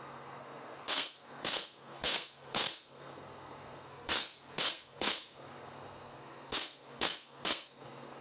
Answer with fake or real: fake